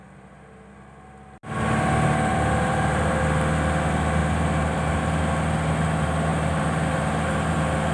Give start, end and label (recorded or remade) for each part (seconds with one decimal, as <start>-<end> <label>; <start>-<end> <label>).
0.0-2.3 recorded; 2.3-3.2 remade; 3.2-4.2 recorded; 4.2-4.9 remade; 4.9-6.3 recorded; 6.3-7.5 remade; 7.5-7.9 recorded